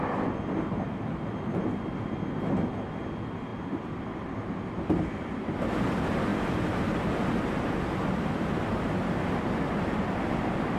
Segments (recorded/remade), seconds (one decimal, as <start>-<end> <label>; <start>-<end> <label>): 0.0-10.8 recorded

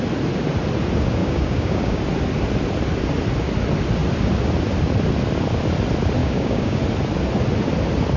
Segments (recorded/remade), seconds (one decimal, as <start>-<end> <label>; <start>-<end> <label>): 0.0-1.2 recorded; 1.2-2.0 remade; 2.0-6.2 recorded; 6.2-6.8 remade; 6.8-8.2 recorded